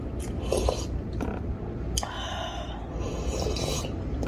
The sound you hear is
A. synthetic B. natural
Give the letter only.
B